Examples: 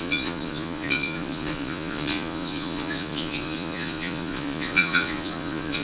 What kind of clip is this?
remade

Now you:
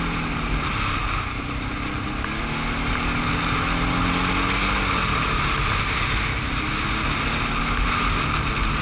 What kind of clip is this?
recorded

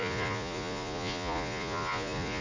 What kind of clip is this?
remade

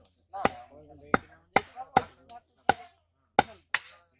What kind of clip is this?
recorded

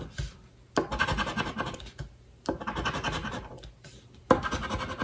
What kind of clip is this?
recorded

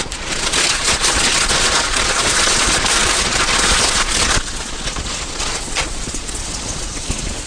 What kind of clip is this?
remade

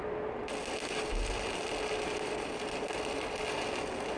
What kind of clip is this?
recorded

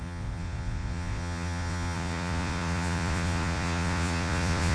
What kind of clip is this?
remade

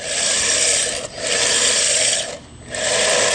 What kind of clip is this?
recorded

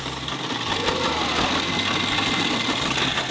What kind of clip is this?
recorded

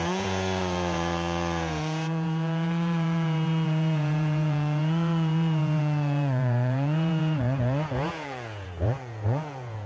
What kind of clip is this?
remade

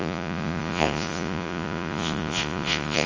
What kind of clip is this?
remade